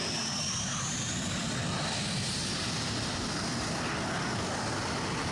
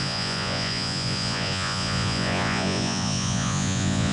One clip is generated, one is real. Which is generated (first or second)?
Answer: second